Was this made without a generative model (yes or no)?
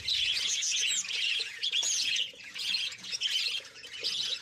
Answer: no